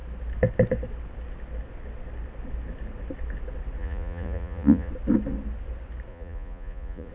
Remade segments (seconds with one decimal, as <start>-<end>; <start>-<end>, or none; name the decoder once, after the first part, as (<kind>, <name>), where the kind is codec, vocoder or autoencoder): 3.8-4.9 (vocoder, Vocos); 6.1-7.1

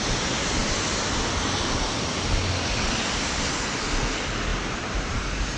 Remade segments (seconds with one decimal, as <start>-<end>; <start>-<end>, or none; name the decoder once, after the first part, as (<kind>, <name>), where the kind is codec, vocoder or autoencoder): 4.5-5.6 (vocoder, BigVGAN v2)

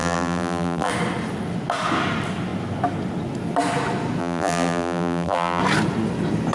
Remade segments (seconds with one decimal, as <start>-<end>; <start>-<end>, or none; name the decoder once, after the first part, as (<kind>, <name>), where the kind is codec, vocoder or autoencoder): 0.0-0.9 (vocoder, BigVGAN v2); 4.2-5.6

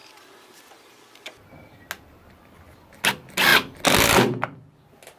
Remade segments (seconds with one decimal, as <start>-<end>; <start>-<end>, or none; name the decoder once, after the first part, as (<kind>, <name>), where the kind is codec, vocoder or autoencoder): none

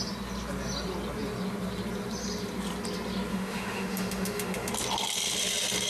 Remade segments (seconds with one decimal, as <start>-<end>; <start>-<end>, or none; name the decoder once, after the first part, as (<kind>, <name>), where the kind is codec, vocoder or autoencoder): 3.3-4.7 (autoencoder, DAC-VAE)

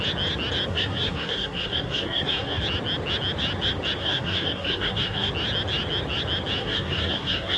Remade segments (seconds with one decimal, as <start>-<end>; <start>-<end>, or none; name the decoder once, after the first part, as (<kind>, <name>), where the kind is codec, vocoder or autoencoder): 0.7-2.6 (codec, SNAC); 4.0-5.3; 6.6-7.6